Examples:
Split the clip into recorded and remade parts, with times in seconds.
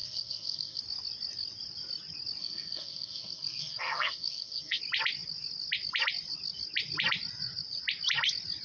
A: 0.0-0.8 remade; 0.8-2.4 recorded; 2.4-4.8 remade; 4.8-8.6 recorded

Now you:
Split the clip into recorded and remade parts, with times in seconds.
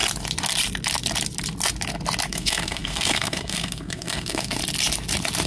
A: 0.0-2.3 recorded; 2.3-4.6 remade; 4.6-5.5 recorded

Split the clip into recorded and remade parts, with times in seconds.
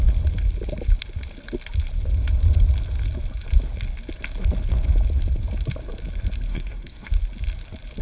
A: 0.0-6.5 recorded; 6.5-7.1 remade; 7.1-8.0 recorded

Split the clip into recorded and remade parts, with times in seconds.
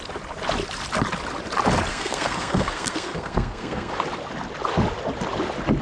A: 0.0-1.9 recorded; 1.9-3.9 remade; 3.9-5.8 recorded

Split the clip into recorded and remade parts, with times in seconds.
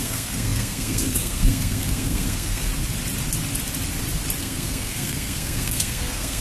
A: 0.0-2.7 remade; 2.7-4.4 recorded; 4.4-6.4 remade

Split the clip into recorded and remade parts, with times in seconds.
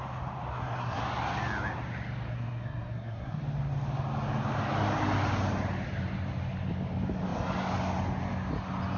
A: 0.0-0.5 recorded; 0.5-1.0 remade; 1.0-2.3 recorded; 2.3-3.4 remade; 3.4-9.0 recorded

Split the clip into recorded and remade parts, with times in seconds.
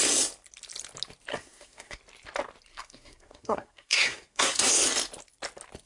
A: 0.0-1.3 recorded; 1.3-2.0 remade; 2.0-2.7 recorded; 2.7-4.7 remade; 4.7-5.9 recorded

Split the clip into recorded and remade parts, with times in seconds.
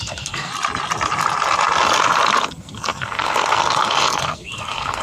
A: 0.0-0.5 remade; 0.5-2.4 recorded; 2.4-5.0 remade